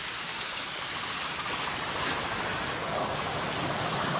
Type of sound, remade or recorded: recorded